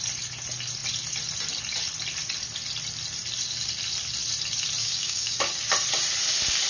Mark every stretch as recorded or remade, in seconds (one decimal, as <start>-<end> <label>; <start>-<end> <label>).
0.0-4.8 recorded; 4.8-5.4 remade; 5.4-6.7 recorded